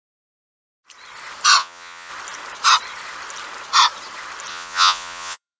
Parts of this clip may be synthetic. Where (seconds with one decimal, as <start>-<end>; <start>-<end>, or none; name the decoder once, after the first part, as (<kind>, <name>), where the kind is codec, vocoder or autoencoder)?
1.6-2.1 (vocoder, Vocos); 4.5-5.6

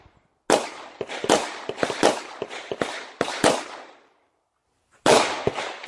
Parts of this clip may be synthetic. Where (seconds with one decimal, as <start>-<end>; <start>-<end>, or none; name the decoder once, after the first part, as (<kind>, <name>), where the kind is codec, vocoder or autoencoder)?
none

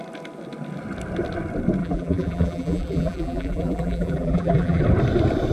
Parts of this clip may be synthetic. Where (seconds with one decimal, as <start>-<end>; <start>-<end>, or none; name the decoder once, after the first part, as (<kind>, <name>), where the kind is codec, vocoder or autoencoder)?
1.8-4.8 (vocoder, BigVGAN v2)

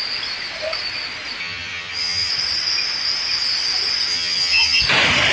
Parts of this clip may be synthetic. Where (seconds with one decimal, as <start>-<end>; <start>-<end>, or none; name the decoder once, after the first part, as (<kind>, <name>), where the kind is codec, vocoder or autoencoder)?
1.4-2.3 (vocoder, HiFi-GAN); 4.1-4.8

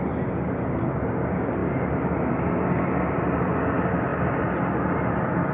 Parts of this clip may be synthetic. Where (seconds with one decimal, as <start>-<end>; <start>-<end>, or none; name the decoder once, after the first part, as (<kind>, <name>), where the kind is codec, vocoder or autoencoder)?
0.0-4.1 (vocoder, BigVGAN v2); 4.9-5.5

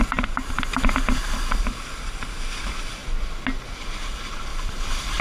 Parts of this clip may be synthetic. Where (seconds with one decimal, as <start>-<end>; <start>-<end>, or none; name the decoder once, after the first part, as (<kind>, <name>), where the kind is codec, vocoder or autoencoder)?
1.2-2.6 (vocoder, BigVGAN v2)